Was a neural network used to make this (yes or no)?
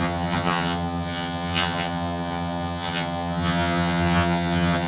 yes